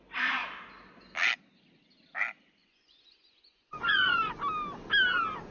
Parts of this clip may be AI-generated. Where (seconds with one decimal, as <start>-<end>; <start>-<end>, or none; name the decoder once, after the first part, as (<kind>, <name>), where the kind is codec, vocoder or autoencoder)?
2.6-4.3 (vocoder, Vocos)